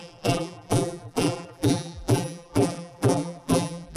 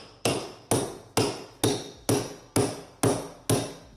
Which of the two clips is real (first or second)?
second